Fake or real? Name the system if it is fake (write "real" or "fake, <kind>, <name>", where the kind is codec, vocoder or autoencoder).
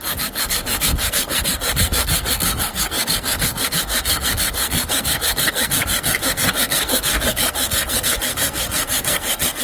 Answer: fake, codec, SNAC